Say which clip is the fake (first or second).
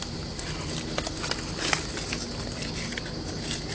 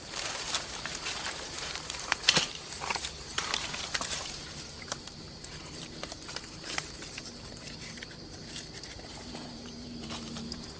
second